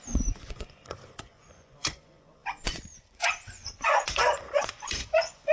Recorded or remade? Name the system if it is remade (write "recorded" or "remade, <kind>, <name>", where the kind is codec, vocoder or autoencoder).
remade, vocoder, Vocos